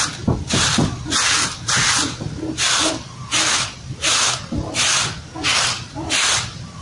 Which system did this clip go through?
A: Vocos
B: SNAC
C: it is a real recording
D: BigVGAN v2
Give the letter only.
C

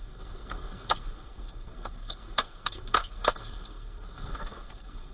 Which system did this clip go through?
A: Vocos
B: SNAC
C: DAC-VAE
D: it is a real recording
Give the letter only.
B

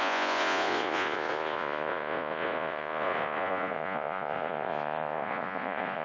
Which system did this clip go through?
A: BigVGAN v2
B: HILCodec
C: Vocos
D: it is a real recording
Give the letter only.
C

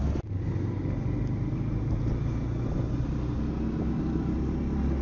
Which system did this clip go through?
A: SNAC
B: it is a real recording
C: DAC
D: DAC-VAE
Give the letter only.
B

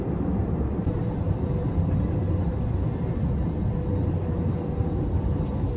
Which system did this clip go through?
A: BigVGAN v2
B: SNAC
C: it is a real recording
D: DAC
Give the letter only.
C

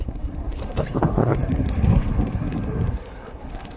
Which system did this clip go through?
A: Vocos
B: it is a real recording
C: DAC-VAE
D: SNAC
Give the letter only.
D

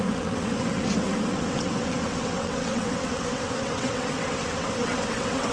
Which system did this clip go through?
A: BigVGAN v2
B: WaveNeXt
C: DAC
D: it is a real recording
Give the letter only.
B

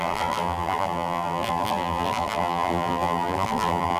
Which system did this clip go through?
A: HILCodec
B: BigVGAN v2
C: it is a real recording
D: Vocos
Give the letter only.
B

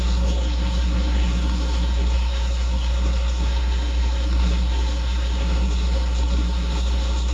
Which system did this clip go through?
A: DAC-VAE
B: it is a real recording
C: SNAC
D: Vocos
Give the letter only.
C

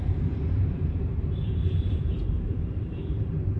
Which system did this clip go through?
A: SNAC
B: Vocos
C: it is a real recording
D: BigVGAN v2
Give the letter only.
D